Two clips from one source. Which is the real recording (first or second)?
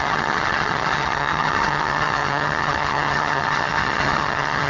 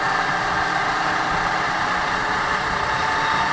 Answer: second